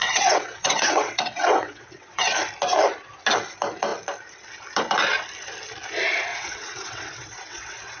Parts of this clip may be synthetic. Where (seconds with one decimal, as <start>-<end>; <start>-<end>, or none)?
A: 0.0-2.2; 6.3-8.0